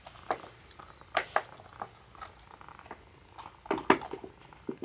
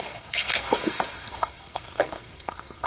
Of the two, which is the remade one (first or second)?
second